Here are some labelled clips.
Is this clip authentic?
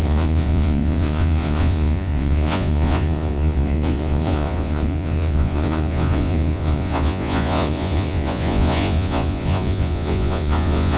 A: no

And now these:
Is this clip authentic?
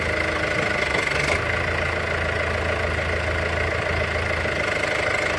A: yes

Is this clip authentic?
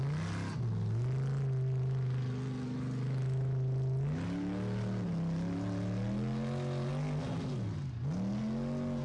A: yes